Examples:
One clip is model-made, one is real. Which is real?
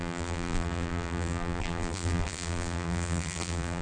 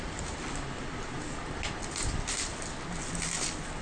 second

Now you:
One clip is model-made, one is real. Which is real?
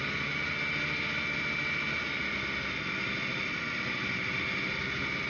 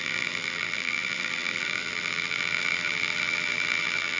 first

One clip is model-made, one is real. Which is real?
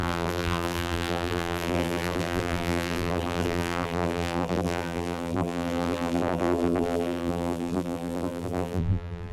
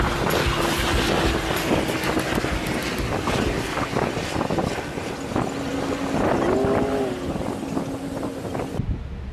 second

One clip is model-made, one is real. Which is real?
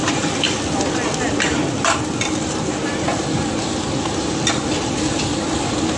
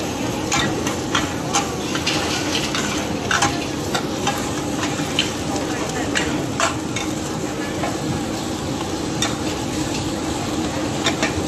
second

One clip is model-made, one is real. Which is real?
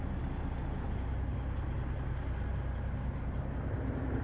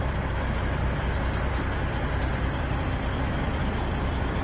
first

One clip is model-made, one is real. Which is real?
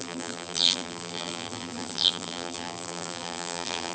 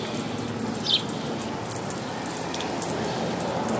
second